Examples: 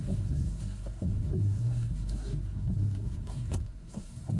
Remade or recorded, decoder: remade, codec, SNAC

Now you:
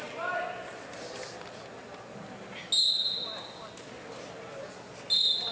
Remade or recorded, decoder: recorded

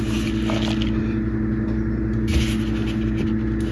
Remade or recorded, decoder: recorded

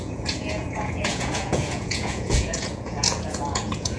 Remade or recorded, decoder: remade, vocoder, Vocos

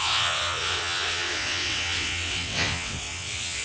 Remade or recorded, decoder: remade, vocoder, WaveNeXt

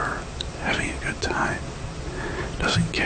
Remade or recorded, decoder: recorded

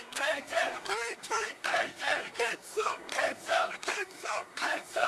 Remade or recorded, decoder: remade, codec, SNAC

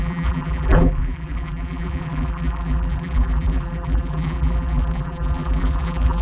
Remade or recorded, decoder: remade, vocoder, BigVGAN v2